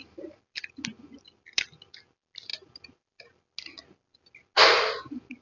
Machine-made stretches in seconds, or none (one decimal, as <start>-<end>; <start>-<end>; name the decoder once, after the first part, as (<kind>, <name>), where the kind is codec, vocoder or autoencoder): none